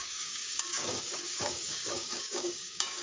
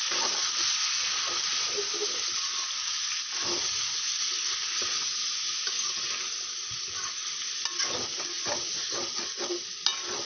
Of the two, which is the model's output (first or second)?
first